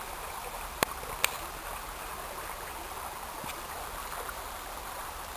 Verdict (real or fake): real